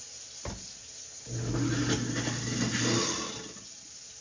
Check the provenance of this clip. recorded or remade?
recorded